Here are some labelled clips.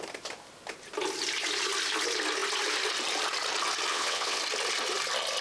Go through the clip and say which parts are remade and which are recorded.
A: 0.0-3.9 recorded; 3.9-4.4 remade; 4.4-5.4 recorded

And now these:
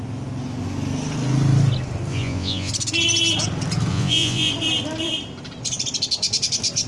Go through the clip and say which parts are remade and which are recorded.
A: 0.0-2.1 recorded; 2.1-2.7 remade; 2.7-3.9 recorded; 3.9-4.5 remade; 4.5-6.9 recorded